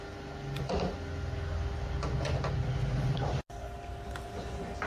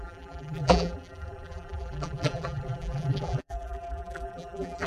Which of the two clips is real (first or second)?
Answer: first